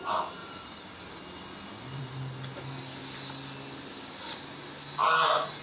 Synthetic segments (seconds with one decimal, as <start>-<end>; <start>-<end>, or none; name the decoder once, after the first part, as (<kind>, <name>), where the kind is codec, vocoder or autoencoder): none